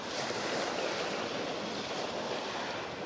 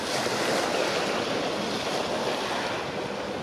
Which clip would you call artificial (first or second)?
first